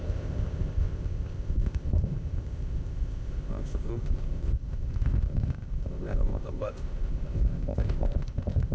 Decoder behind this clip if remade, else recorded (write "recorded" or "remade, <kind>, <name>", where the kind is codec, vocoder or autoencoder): remade, codec, ZipCodec